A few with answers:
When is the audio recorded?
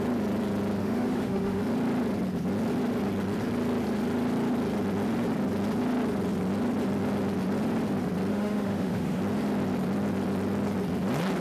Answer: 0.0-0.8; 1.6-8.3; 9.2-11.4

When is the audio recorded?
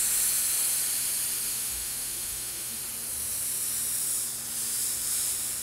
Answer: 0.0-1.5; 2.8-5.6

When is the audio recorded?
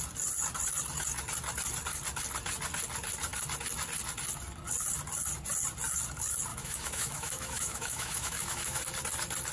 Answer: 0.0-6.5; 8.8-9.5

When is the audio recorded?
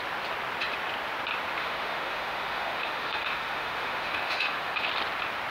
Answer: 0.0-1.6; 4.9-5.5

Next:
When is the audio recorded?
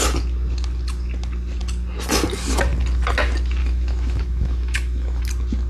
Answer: 0.0-3.6; 5.2-5.7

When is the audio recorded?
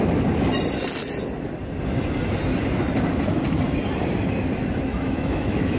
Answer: 0.0-4.9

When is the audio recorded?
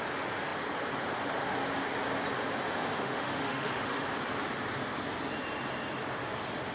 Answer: 0.0-2.9; 4.1-6.7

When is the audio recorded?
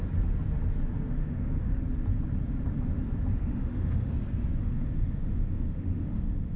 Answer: 0.0-1.2; 1.8-3.4; 4.1-4.6